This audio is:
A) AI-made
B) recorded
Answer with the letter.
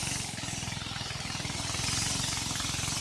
B